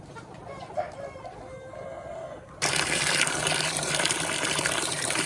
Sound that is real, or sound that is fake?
fake